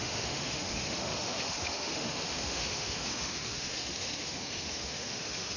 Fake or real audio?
fake